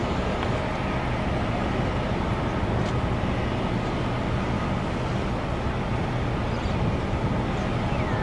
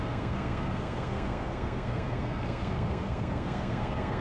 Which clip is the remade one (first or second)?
second